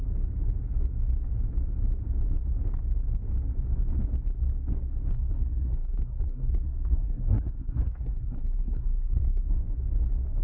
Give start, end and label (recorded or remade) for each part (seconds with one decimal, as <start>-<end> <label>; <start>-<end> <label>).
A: 0.0-5.1 recorded; 5.1-9.6 remade; 9.6-10.4 recorded